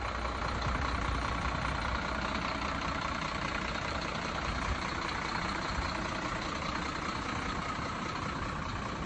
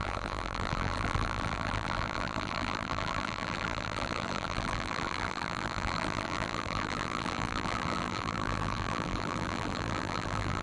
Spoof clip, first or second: second